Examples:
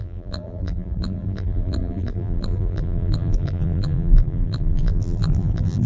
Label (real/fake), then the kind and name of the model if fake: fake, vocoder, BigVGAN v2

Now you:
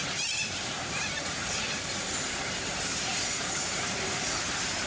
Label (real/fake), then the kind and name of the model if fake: fake, vocoder, BigVGAN v2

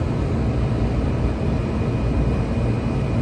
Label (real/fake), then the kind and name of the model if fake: real